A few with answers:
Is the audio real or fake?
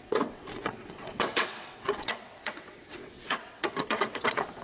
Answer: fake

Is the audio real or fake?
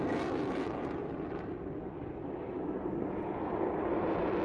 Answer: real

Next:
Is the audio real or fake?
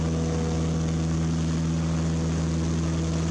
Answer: real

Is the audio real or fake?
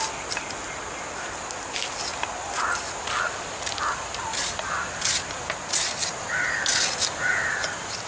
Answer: real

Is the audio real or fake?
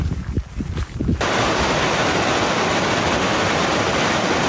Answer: real